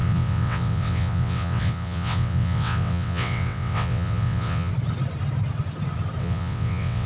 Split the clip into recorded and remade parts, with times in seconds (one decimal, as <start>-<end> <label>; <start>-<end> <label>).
0.0-4.7 remade; 4.7-6.2 recorded; 6.2-7.1 remade